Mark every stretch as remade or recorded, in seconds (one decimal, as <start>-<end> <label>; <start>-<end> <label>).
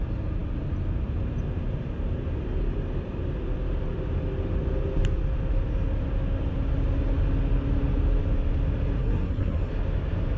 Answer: 0.0-9.0 recorded; 9.0-9.7 remade; 9.7-10.4 recorded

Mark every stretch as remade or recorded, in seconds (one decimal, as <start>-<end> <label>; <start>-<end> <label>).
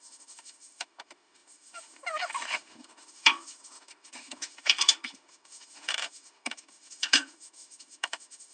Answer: 0.0-8.5 remade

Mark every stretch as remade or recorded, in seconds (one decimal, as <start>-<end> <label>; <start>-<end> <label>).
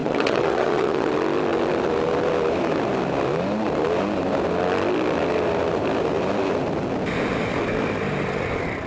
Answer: 0.0-1.1 remade; 1.1-8.9 recorded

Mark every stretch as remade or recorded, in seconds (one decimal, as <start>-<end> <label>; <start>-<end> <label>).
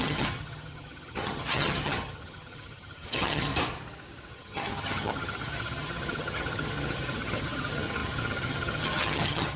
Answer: 0.0-3.5 remade; 3.5-4.3 recorded; 4.3-9.6 remade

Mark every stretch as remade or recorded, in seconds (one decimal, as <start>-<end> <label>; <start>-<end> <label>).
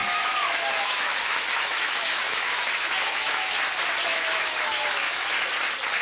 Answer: 0.0-3.6 remade; 3.6-4.1 recorded; 4.1-5.5 remade; 5.5-6.0 recorded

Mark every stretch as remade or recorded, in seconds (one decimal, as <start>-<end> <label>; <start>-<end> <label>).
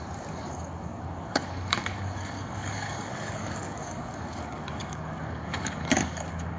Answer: 0.0-6.6 remade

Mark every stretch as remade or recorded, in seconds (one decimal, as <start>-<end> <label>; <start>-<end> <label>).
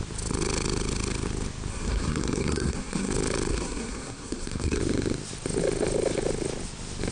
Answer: 0.0-1.7 recorded; 1.7-3.1 remade; 3.1-3.5 recorded; 3.5-4.8 remade; 4.8-7.1 recorded